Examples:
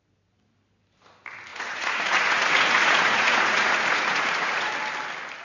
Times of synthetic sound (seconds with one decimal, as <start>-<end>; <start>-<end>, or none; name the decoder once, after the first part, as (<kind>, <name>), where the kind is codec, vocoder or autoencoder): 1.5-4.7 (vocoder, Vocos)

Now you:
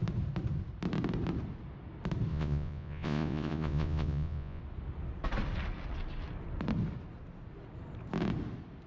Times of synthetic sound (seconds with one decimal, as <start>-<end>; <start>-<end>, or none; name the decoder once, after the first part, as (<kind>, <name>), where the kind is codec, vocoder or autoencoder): 2.3-4.6 (vocoder, Vocos)

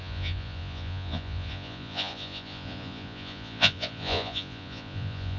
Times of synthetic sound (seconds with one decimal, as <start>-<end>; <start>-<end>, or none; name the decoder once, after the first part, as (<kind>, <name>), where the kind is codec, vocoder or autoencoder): 0.0-5.4 (vocoder, Vocos)

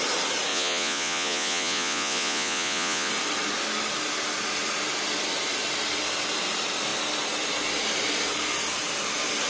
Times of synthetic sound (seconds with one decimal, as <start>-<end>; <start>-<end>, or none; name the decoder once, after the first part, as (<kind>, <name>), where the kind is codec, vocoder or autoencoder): 0.5-3.1 (vocoder, Vocos)